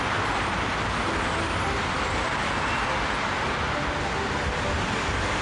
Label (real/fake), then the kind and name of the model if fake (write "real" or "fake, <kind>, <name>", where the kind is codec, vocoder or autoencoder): real